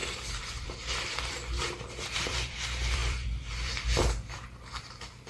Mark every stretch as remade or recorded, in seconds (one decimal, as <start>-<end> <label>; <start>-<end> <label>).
0.0-5.3 remade